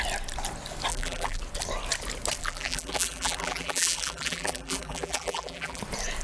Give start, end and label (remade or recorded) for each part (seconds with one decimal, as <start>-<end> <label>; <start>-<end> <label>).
0.0-0.9 recorded; 0.9-1.4 remade; 1.4-2.4 recorded; 2.4-5.8 remade; 5.8-6.2 recorded